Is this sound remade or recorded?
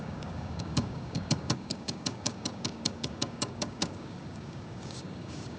remade